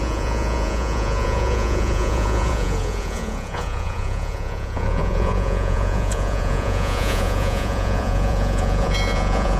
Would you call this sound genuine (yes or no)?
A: no